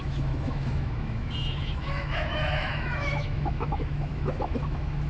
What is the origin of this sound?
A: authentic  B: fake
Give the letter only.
B